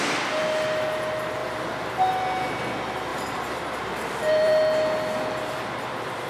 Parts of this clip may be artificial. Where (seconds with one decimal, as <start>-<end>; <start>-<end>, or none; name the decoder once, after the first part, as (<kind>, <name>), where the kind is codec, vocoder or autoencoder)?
3.1-4.5 (vocoder, BigVGAN v2)